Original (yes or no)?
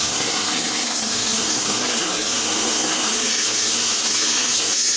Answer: no